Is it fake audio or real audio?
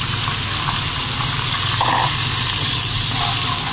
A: real